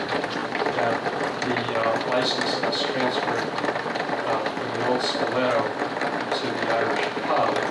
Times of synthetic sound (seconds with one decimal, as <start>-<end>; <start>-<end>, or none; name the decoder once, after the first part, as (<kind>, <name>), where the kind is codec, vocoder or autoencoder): none